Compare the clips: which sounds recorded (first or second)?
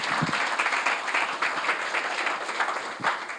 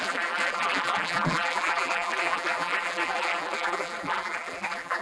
first